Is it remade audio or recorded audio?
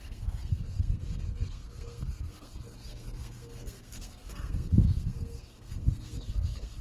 remade